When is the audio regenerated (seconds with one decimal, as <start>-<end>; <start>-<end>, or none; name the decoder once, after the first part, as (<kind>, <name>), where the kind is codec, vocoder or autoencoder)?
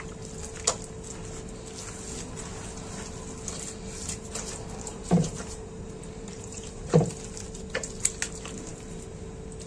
4.9-7.1 (vocoder, BigVGAN v2)